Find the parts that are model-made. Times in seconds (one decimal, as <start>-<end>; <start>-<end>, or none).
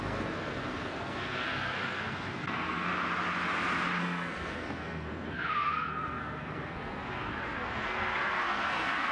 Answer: 0.0-2.9; 4.0-9.1